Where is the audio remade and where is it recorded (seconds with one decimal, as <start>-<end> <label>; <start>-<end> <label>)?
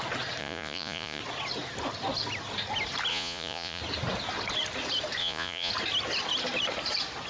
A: 0.0-0.4 recorded; 0.4-1.2 remade; 1.2-3.1 recorded; 3.1-3.8 remade; 3.8-5.2 recorded; 5.2-5.7 remade; 5.7-7.3 recorded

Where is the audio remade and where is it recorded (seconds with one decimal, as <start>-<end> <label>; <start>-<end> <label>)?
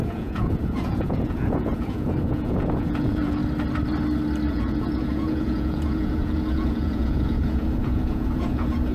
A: 0.0-3.4 remade; 3.4-4.5 recorded; 4.5-8.9 remade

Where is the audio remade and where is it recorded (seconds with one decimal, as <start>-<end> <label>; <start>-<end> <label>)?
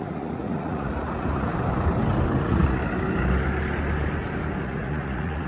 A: 0.0-1.5 remade; 1.5-2.4 recorded; 2.4-2.8 remade; 2.8-4.6 recorded; 4.6-5.5 remade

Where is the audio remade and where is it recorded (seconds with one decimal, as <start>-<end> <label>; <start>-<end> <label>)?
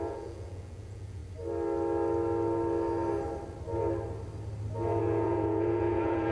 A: 0.0-1.2 remade; 1.2-5.0 recorded; 5.0-6.3 remade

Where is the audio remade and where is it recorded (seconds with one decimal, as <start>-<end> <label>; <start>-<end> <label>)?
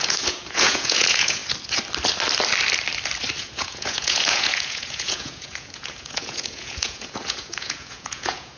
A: 0.0-1.4 remade; 1.4-3.4 recorded; 3.4-8.6 remade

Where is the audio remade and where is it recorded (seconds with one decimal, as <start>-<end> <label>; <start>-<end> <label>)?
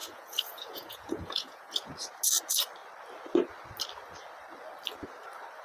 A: 0.0-1.9 remade; 1.9-5.6 recorded